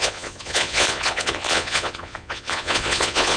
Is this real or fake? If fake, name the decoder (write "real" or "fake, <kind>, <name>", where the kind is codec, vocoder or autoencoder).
fake, vocoder, Vocos